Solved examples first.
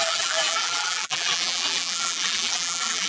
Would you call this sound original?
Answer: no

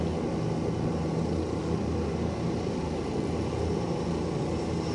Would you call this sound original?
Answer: yes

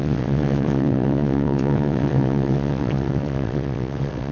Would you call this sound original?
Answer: no